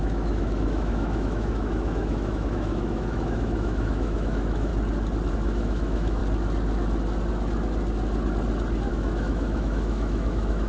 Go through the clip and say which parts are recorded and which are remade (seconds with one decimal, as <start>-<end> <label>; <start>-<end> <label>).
0.0-4.7 remade; 4.7-5.3 recorded; 5.3-6.2 remade; 6.2-8.9 recorded; 8.9-10.7 remade